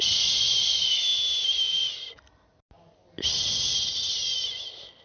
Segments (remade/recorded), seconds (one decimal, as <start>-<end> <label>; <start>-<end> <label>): 0.0-5.0 recorded

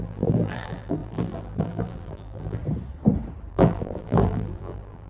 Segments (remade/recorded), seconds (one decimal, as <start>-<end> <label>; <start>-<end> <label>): 0.0-2.6 remade; 2.6-3.5 recorded; 3.5-5.1 remade

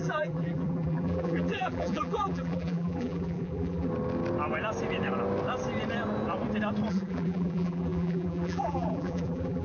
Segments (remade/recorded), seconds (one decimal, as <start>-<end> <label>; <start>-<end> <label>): 0.0-3.9 remade; 3.9-6.9 recorded; 6.9-9.6 remade